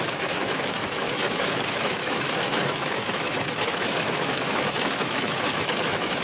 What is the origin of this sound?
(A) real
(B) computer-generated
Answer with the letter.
B